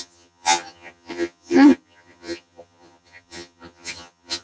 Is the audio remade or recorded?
remade